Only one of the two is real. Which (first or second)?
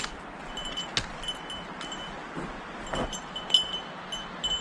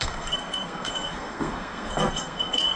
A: first